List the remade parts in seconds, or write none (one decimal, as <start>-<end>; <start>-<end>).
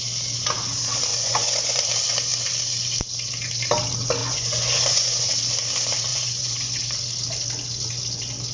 1.1-1.8; 4.2-5.3; 6.1-6.8